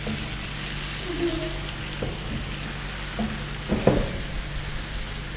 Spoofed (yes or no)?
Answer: no